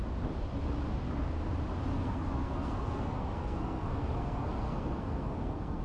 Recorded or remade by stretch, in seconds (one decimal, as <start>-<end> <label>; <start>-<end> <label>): 0.0-1.9 recorded; 1.9-5.8 remade